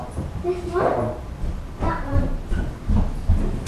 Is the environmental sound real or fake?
real